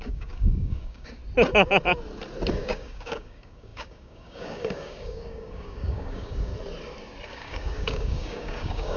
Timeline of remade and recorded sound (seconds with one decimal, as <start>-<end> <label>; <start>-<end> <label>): 0.0-1.2 remade; 1.2-2.5 recorded; 2.5-6.5 remade; 6.5-7.3 recorded; 7.3-9.0 remade